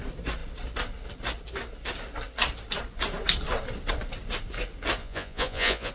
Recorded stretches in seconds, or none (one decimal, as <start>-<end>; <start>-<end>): 0.0-5.0